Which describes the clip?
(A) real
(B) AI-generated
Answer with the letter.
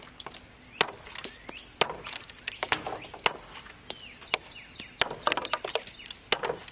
A